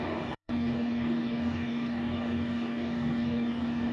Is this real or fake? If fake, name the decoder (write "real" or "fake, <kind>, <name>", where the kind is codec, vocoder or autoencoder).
fake, codec, DAC